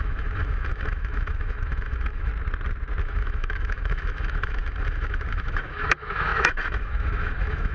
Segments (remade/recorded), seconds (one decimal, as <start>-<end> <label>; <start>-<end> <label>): 0.0-2.3 remade; 2.3-3.0 recorded; 3.0-7.7 remade